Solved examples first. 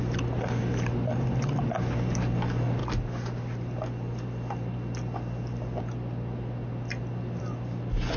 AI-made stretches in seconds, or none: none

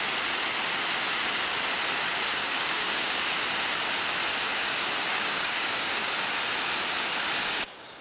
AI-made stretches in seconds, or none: 2.4-3.2 (codec, DAC); 5.1-6.1; 7.4-8.0

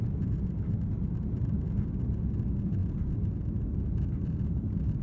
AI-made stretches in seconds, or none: none